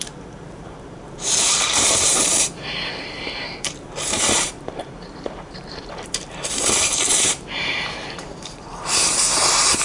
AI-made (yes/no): yes